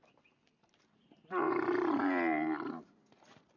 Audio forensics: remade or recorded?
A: recorded